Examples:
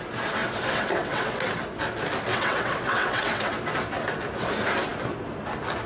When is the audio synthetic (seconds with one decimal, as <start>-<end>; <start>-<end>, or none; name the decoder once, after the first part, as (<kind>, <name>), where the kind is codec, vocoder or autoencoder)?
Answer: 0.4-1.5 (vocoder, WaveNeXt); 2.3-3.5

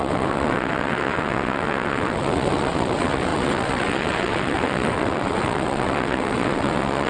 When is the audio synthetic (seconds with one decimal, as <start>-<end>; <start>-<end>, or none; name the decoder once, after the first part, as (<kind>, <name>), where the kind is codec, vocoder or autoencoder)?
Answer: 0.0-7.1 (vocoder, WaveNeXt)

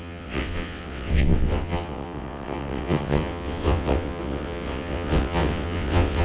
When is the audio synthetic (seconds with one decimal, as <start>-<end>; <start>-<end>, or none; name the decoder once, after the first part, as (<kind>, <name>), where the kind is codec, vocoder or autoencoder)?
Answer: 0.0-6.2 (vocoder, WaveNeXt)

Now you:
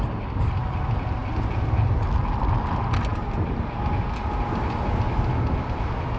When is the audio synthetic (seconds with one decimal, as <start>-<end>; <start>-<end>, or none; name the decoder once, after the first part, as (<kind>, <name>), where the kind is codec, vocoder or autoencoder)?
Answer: none

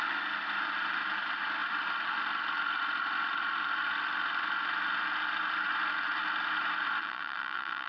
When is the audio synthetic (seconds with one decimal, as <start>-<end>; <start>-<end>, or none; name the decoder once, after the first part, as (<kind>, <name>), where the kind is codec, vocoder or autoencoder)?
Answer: 7.0-7.9 (vocoder, WaveNeXt)

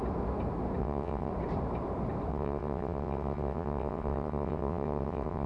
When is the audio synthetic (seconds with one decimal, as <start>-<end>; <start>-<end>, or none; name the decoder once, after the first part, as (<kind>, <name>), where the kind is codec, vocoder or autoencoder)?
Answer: 0.8-1.3 (vocoder, WaveNeXt); 2.3-5.5